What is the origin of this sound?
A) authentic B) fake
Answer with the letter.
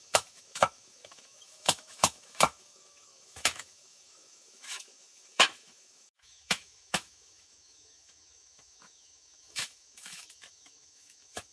B